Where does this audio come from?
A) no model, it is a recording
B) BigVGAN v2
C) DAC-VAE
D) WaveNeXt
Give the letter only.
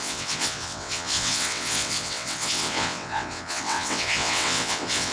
D